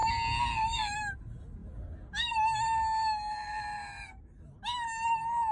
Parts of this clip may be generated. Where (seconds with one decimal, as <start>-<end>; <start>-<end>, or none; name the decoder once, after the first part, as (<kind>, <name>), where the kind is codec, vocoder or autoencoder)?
none